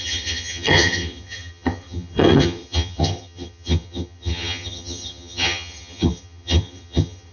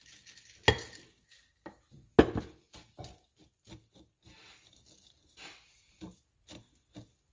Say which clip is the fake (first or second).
first